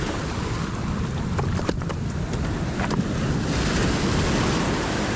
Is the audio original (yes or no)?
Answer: yes